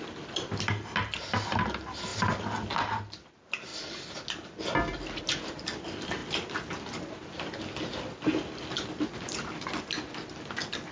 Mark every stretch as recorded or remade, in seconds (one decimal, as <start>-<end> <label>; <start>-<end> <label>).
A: 0.0-10.9 recorded